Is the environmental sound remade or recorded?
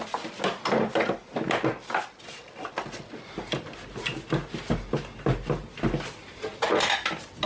recorded